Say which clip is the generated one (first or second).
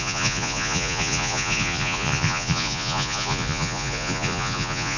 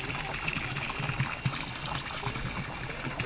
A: first